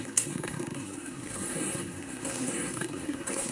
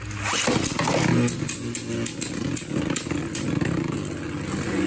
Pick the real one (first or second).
second